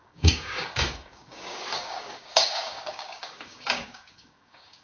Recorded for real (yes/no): no